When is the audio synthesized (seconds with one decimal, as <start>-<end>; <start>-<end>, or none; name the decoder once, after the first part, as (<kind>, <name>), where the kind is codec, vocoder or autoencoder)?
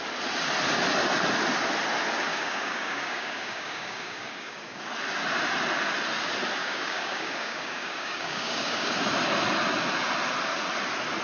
2.3-4.8 (codec, DAC); 6.6-8.9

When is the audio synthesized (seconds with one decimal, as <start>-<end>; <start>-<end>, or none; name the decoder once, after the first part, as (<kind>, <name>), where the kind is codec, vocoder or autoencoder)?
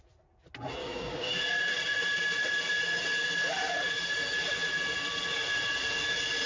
0.8-1.4 (codec, DAC)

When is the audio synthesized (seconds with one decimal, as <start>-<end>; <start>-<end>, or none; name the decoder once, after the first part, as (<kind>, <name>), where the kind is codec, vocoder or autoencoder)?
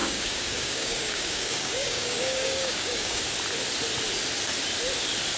0.0-3.2 (codec, DAC)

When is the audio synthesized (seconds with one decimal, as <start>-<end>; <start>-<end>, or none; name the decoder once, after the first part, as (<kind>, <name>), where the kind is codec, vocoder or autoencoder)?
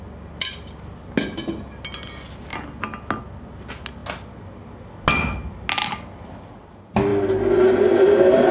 none